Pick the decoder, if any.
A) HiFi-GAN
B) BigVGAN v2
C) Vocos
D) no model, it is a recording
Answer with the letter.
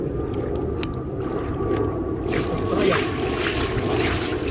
D